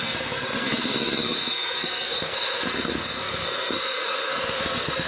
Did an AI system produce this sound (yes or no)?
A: yes